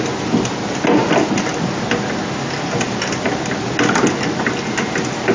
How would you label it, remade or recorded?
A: recorded